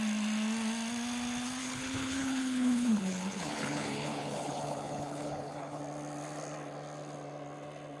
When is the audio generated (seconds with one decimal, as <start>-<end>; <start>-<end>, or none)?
1.6-5.8

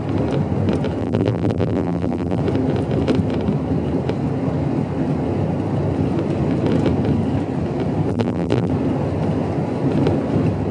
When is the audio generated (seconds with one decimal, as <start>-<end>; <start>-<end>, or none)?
1.0-2.4; 8.1-8.7

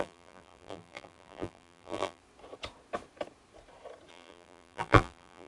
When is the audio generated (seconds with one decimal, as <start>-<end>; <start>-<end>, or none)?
0.0-2.2; 4.1-5.5